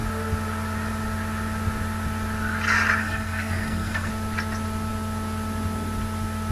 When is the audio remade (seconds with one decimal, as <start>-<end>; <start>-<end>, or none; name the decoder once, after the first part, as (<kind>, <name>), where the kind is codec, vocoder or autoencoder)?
3.0-4.1 (codec, SNAC)